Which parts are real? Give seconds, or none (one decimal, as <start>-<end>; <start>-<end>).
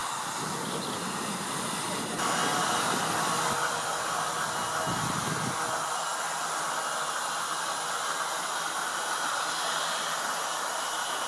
0.0-11.3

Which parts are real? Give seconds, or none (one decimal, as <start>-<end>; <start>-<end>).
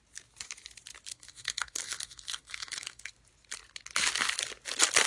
0.0-1.1; 3.1-5.1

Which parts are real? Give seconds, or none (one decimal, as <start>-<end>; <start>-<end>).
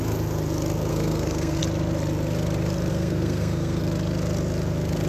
0.0-0.9; 1.6-2.9; 3.8-5.1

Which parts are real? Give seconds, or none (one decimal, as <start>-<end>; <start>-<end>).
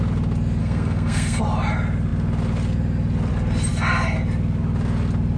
0.0-0.6; 1.4-5.4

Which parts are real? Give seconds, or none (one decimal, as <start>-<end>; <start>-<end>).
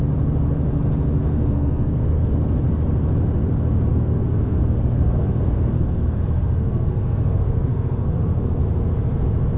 0.0-1.2; 2.3-3.9; 8.6-9.6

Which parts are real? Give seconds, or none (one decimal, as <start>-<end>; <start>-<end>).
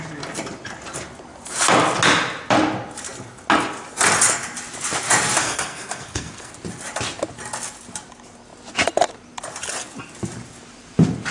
0.0-5.4; 6.5-11.3